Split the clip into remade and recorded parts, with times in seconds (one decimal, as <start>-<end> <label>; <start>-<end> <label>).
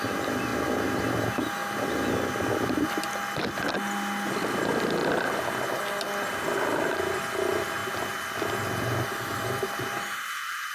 0.0-10.7 recorded